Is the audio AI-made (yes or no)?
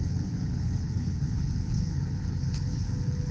yes